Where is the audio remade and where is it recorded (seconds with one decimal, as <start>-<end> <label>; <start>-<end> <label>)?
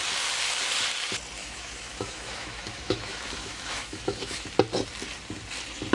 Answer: 0.0-1.4 recorded; 1.4-4.5 remade; 4.5-5.9 recorded